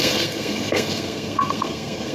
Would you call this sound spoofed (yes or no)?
yes